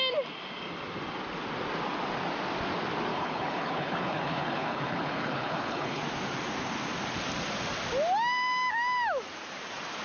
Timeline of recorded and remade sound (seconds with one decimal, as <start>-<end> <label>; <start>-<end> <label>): 0.0-3.1 recorded; 3.1-6.0 remade; 6.0-10.0 recorded